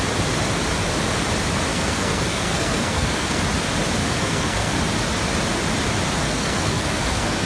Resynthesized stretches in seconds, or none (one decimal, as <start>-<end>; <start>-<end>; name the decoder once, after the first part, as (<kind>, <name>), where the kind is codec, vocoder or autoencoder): 1.7-3.4 (codec, SNAC); 4.0-4.8; 6.2-7.5

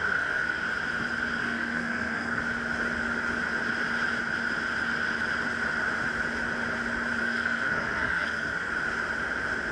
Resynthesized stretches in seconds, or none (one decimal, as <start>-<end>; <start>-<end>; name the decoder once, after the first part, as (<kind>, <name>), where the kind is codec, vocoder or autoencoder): 0.0-0.6 (codec, SNAC); 1.4-2.4; 7.2-8.7

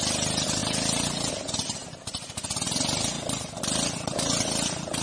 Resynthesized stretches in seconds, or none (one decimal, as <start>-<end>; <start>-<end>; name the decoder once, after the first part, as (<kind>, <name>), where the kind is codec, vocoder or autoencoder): none

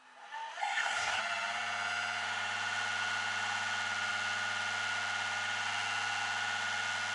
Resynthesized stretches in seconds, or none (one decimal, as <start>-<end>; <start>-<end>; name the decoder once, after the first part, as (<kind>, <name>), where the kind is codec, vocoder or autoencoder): 0.6-1.2 (codec, SNAC)